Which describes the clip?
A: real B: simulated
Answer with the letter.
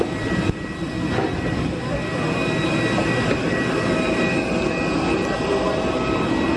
A